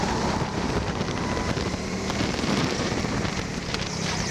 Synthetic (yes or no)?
yes